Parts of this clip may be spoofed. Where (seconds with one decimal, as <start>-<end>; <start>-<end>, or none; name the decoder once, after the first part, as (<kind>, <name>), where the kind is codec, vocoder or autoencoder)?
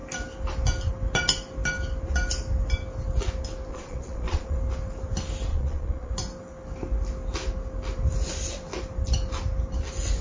3.7-4.6 (vocoder, Vocos); 5.5-6.1